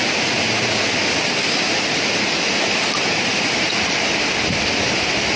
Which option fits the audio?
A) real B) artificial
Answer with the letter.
A